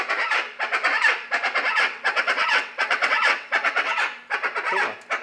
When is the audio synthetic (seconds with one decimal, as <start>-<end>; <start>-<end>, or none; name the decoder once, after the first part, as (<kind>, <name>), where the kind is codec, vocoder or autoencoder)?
1.7-4.0 (vocoder, WaveNeXt)